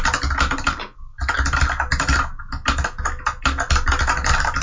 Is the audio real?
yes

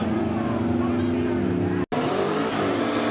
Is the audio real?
yes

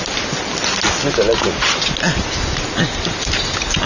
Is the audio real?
yes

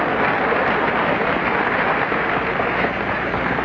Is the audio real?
yes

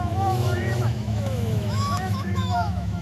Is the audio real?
no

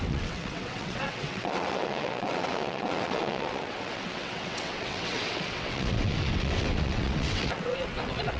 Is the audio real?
no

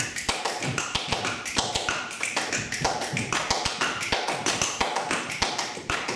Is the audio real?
yes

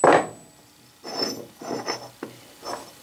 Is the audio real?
yes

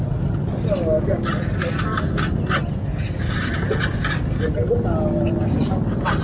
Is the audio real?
yes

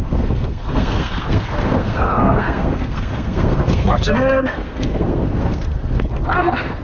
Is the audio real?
no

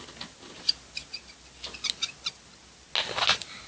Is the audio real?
yes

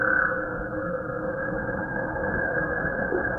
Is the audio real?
no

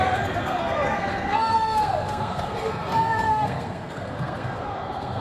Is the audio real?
no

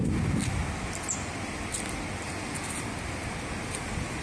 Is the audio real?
yes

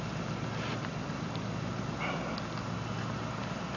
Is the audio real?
yes